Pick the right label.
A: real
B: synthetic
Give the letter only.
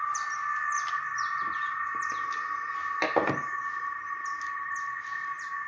A